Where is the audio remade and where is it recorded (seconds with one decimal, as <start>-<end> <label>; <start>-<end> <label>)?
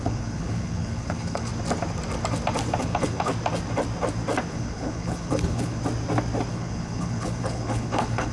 0.0-1.5 remade; 1.5-2.8 recorded; 2.8-3.3 remade; 3.3-4.5 recorded; 4.5-5.8 remade; 5.8-6.5 recorded; 6.5-8.3 remade